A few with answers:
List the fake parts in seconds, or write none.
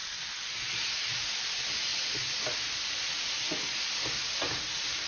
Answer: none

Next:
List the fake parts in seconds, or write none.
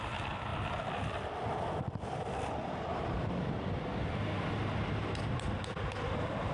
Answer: 0.5-3.8 (vocoder, BigVGAN v2)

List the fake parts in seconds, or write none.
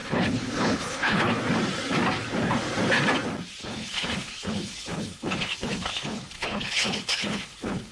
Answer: 0.0-1.4 (codec, HILCodec); 3.6-7.9